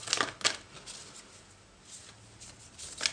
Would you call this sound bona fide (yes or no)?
yes